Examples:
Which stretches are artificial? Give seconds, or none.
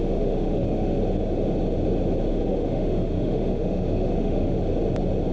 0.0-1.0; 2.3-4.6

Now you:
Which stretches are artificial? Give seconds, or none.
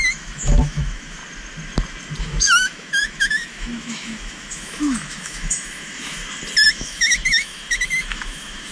0.0-1.2; 2.2-6.2; 6.7-8.7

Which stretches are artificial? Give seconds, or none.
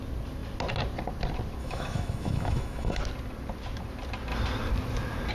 1.6-3.0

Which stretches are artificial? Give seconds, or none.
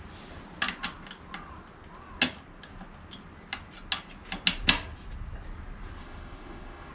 6.0-6.9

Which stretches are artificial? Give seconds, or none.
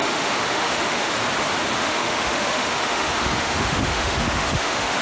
0.0-1.1; 1.8-5.0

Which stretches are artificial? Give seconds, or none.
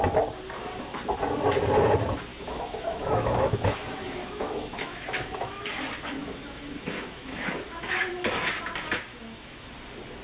2.3-5.7; 6.2-8.1; 9.1-9.7